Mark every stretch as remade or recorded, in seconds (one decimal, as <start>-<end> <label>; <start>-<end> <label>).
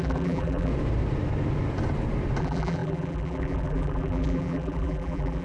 0.0-0.7 remade; 0.7-2.4 recorded; 2.4-5.4 remade